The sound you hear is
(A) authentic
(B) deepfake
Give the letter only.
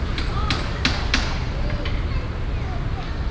A